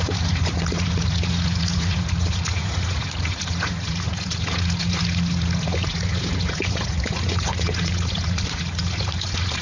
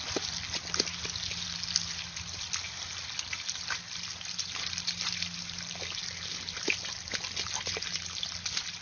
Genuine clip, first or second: second